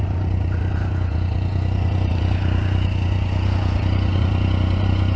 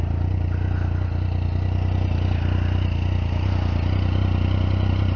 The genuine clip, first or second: second